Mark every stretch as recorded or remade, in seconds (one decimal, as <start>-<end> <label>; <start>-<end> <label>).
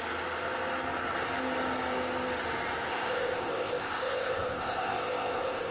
0.0-2.9 recorded; 2.9-5.7 remade